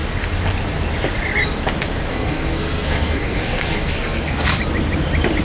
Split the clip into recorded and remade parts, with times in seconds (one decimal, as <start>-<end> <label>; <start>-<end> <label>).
0.0-2.1 recorded; 2.1-4.6 remade; 4.6-5.4 recorded

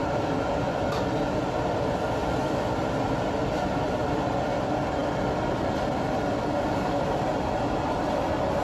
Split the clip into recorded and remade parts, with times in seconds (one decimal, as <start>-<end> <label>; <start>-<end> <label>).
0.0-5.0 remade; 5.0-5.6 recorded; 5.6-8.6 remade

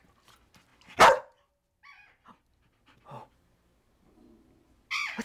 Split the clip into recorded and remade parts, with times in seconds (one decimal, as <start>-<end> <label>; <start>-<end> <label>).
0.0-5.2 recorded

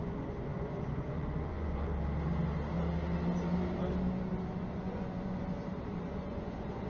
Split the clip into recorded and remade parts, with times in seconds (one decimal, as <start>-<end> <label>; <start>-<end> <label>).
0.0-1.9 remade; 1.9-4.7 recorded; 4.7-5.4 remade; 5.4-6.0 recorded; 6.0-6.9 remade